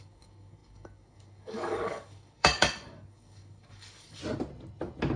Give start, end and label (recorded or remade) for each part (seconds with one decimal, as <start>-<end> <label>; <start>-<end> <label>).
0.0-4.2 remade; 4.2-5.2 recorded